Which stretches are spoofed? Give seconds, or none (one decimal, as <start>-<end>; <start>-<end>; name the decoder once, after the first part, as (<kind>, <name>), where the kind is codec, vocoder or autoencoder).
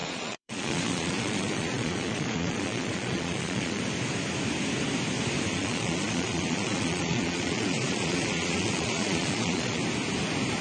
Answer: 0.0-3.8 (vocoder, Vocos); 5.5-9.8